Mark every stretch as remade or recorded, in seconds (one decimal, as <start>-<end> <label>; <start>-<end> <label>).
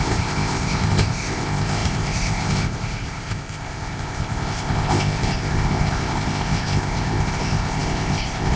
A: 0.0-8.6 remade